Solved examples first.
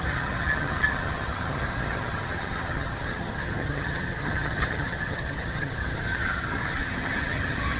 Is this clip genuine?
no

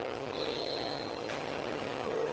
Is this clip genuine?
no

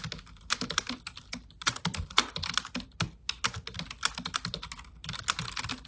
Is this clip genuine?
yes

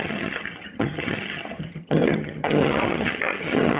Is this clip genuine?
no